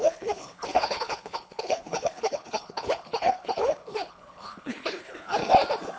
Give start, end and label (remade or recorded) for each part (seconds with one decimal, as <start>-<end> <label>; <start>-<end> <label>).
0.0-5.4 remade; 5.4-6.0 recorded